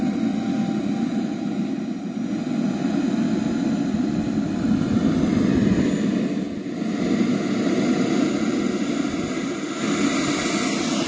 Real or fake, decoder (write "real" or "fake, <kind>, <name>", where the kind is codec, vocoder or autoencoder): real